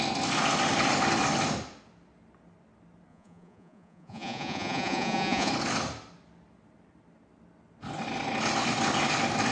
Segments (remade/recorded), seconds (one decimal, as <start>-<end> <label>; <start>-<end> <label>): 0.0-3.1 recorded; 3.1-5.5 remade; 5.5-9.5 recorded